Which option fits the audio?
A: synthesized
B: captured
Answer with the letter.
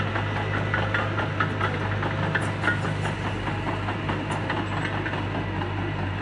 B